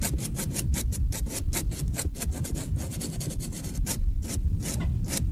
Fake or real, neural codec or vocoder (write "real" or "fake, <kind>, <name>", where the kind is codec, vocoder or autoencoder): real